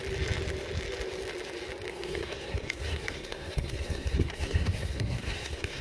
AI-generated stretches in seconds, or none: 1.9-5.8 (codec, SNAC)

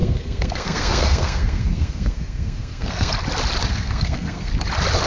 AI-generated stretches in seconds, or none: 0.0-3.1 (codec, SNAC); 3.6-4.5

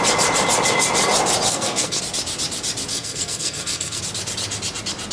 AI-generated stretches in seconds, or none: 1.5-2.0 (codec, SNAC); 2.9-4.0

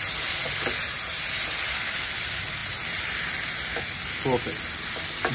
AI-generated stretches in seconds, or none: none